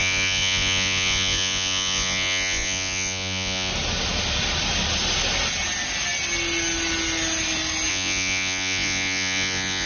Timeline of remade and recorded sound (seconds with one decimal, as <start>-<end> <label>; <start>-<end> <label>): 0.0-3.7 remade; 3.7-7.9 recorded; 7.9-9.9 remade